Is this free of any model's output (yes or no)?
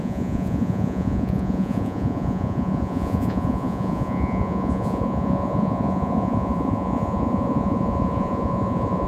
no